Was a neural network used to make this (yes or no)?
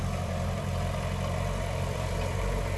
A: yes